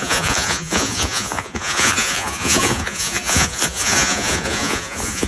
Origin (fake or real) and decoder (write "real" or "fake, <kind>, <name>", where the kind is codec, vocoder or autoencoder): fake, vocoder, Vocos